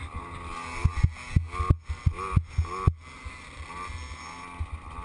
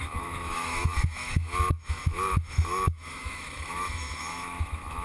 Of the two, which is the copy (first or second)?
second